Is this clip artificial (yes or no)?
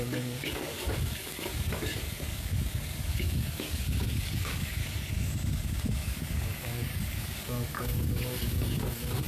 yes